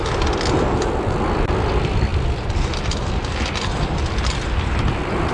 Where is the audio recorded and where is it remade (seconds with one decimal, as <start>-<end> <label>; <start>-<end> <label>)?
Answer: 0.0-5.3 recorded